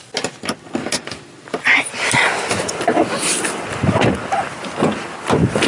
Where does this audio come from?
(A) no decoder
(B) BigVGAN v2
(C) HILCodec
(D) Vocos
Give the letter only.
A